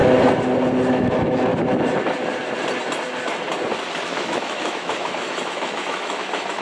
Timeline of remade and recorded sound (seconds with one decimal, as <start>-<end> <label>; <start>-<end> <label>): 0.0-0.9 recorded; 0.9-1.5 remade; 1.5-4.0 recorded; 4.0-6.6 remade